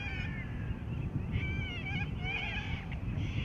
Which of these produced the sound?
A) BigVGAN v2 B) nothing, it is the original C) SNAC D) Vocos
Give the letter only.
B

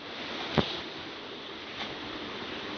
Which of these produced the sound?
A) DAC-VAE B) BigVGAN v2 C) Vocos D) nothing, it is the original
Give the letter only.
D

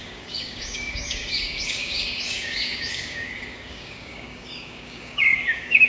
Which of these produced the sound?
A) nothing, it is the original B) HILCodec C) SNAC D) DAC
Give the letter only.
D